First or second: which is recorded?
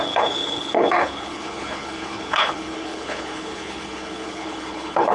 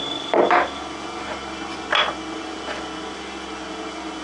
second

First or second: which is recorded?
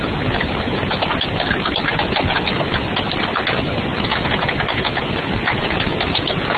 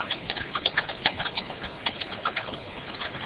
first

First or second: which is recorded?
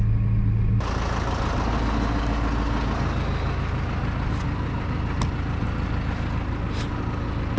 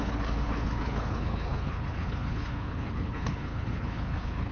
first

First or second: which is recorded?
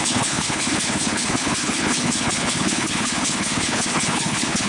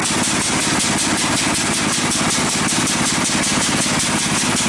second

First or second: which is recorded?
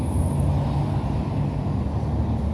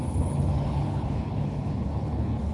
first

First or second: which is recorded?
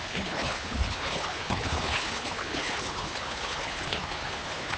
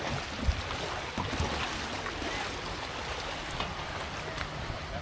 second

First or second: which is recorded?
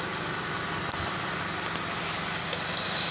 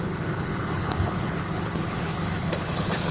first